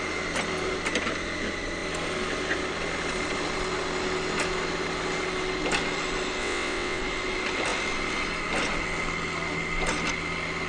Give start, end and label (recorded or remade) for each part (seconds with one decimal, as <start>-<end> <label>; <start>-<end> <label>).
0.0-6.4 recorded; 6.4-7.0 remade; 7.0-10.7 recorded